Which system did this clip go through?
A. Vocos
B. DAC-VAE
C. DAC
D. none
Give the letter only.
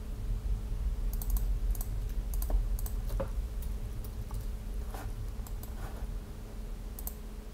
D